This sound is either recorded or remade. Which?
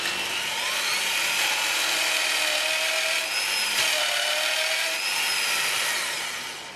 recorded